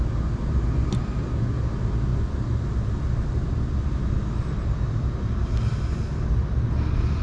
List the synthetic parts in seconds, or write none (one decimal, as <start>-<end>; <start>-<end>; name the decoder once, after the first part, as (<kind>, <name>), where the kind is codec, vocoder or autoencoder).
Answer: none